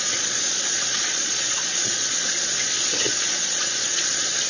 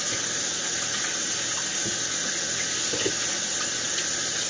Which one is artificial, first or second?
first